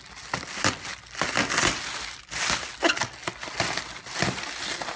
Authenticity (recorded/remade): recorded